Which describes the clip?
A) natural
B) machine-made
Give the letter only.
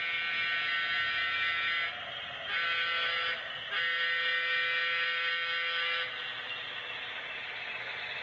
A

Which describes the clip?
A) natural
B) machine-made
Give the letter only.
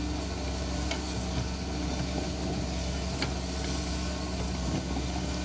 A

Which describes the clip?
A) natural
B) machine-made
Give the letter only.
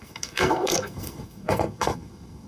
B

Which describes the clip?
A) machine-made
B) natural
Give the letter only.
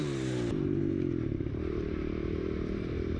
A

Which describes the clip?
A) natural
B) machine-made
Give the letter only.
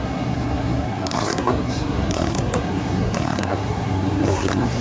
B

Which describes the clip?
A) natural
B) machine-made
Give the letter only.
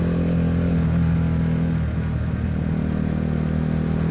A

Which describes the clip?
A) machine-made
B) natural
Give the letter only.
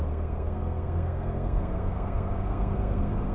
A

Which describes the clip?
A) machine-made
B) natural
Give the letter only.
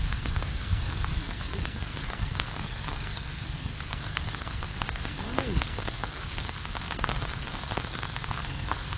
A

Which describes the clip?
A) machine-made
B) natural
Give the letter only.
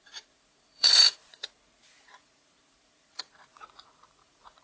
A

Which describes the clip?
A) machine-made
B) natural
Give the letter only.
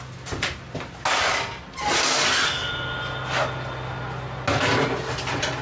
B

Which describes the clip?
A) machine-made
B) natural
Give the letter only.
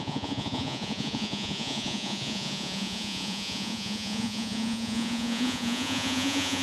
A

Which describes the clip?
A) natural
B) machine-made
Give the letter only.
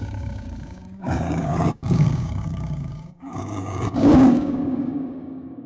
B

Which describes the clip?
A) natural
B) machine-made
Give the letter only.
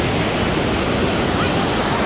A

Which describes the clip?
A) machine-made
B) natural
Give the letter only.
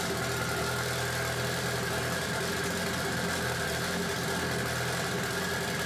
B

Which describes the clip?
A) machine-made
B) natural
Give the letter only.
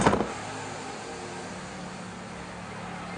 B